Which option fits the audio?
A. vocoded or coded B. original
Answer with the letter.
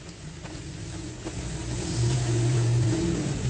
A